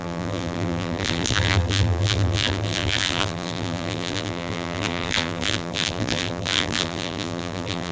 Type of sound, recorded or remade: remade